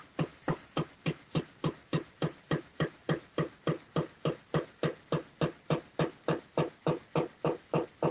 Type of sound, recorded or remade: recorded